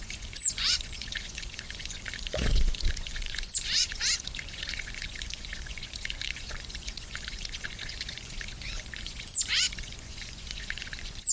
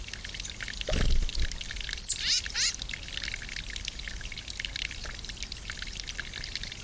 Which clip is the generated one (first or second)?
first